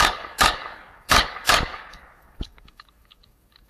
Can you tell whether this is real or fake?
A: fake